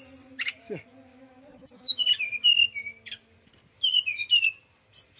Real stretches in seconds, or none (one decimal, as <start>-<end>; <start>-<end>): 0.0-1.1; 2.0-5.2